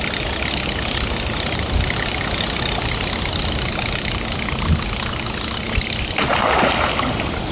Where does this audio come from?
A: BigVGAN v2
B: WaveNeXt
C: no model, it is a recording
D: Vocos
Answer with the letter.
C